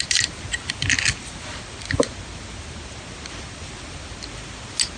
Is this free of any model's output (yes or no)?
yes